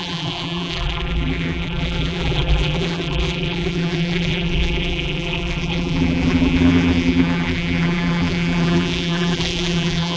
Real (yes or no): no